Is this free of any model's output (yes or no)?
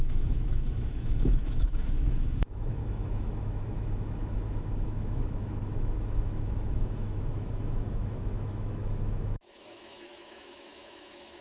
no